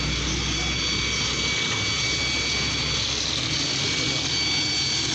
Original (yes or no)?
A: yes